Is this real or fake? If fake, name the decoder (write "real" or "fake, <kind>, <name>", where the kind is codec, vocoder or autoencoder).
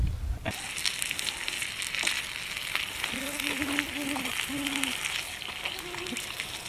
real